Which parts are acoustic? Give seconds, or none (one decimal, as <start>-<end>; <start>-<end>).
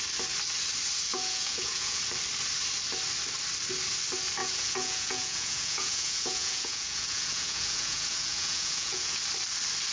0.0-1.1; 2.0-4.4; 9.2-9.9